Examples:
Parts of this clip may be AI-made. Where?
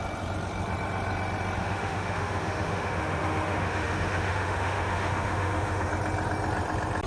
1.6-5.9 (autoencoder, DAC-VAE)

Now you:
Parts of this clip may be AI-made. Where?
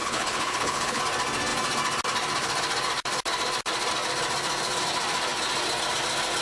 0.0-1.0 (codec, HILCodec)